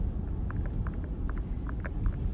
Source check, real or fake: real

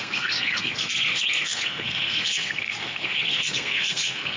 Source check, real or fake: fake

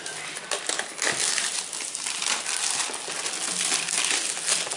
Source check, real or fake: real